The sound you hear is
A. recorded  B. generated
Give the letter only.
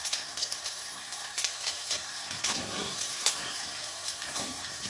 B